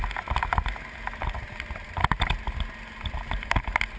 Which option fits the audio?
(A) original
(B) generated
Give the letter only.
A